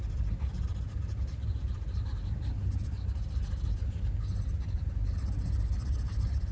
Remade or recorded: recorded